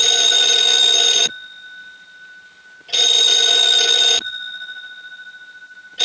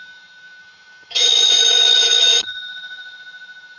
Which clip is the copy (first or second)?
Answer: second